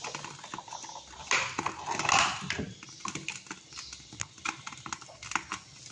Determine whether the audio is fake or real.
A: real